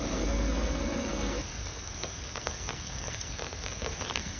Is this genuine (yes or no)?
no